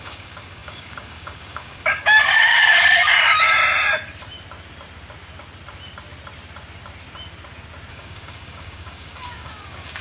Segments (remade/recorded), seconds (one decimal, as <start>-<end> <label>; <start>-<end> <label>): 0.0-3.6 remade; 3.6-7.9 recorded; 7.9-10.0 remade